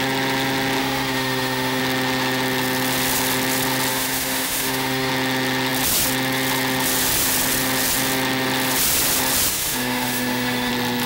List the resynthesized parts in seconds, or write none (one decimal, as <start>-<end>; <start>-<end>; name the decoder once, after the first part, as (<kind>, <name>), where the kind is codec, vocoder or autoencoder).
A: 0.8-1.8 (autoencoder, DAC-VAE); 3.9-5.1; 9.5-10.7